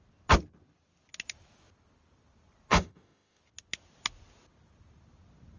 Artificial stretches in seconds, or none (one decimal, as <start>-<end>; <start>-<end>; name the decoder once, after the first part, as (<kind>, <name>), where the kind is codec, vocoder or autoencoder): 2.7-3.4 (autoencoder, DAC-VAE)